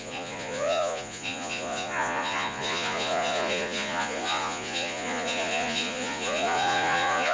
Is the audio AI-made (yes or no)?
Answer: yes